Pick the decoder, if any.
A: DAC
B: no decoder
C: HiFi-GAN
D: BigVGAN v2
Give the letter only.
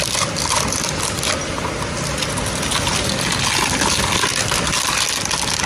B